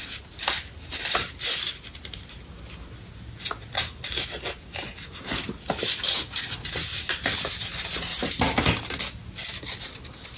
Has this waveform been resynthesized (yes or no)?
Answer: no